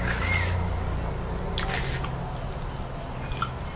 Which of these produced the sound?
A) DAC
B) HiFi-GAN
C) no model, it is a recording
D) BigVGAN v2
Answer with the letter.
C